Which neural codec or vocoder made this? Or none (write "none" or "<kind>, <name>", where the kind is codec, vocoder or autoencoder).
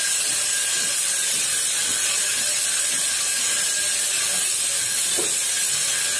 none